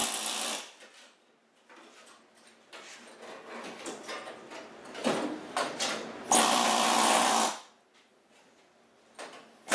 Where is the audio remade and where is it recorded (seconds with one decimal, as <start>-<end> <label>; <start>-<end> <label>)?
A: 0.0-9.7 recorded